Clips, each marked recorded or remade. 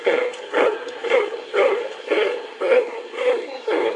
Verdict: remade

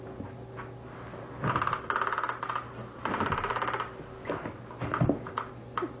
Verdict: recorded